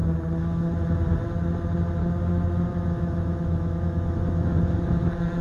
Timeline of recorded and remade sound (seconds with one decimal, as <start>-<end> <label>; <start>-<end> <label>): 0.0-2.0 recorded; 2.0-5.4 remade